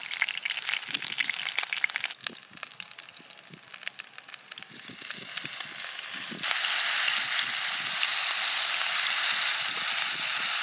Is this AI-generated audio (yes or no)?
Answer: no